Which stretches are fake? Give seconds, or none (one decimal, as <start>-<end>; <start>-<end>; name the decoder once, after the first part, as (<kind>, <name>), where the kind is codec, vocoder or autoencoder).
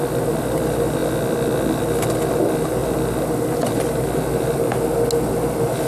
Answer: none